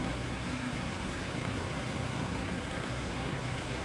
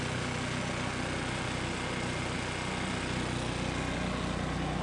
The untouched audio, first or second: second